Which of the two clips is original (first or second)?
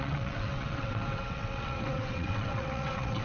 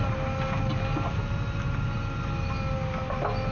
second